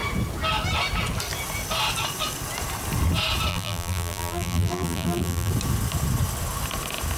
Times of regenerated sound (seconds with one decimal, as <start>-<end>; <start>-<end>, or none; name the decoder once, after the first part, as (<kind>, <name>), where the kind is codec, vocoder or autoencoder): 3.5-5.5 (vocoder, BigVGAN v2)

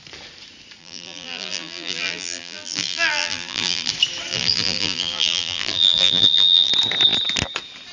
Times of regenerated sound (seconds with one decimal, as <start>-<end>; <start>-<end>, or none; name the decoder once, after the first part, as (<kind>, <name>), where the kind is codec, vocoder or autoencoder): 0.8-3.9 (vocoder, BigVGAN v2); 4.3-6.7

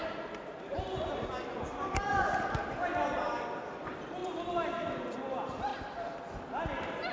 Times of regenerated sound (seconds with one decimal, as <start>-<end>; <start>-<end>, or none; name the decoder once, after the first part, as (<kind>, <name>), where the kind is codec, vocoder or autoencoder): 4.2-4.9 (vocoder, BigVGAN v2); 5.7-6.3